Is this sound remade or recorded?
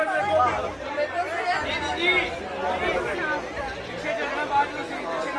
recorded